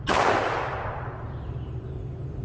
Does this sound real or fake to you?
real